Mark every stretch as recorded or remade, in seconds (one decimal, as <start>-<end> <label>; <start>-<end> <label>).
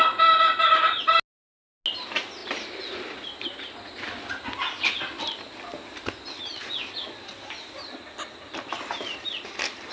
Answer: 0.0-9.9 recorded